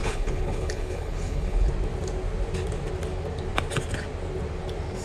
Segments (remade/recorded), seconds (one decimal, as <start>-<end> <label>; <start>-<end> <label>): 0.0-1.7 remade; 1.7-5.0 recorded